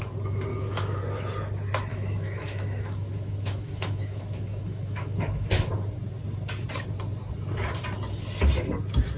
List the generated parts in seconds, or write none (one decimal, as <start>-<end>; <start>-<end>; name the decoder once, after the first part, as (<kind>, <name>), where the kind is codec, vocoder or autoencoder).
0.5-1.0 (autoencoder, DAC-VAE); 1.9-5.7